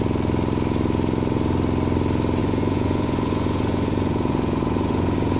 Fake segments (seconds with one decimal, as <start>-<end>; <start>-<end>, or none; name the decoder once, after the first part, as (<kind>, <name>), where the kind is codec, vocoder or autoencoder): 2.4-5.4 (vocoder, Vocos)